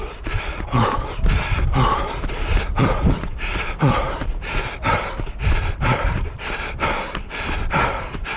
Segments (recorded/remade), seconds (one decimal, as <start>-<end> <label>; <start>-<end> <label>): 0.0-8.4 remade